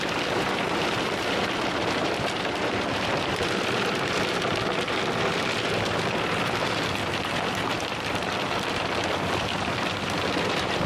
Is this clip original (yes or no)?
no